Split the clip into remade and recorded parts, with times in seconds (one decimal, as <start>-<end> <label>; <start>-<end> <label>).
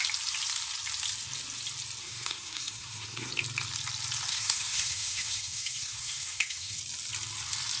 0.0-2.0 recorded; 2.0-3.3 remade; 3.3-4.3 recorded; 4.3-6.8 remade; 6.8-7.8 recorded